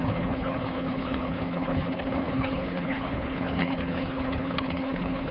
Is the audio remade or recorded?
remade